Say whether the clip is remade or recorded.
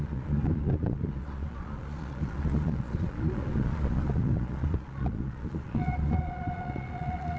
remade